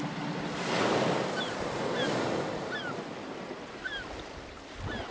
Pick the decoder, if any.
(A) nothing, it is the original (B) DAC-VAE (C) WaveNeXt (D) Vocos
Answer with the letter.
A